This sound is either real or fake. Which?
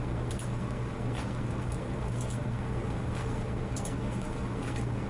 fake